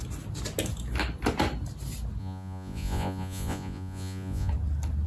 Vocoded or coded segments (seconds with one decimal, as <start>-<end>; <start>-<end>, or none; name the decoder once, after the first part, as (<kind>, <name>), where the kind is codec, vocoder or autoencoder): 2.2-4.5 (vocoder, Vocos)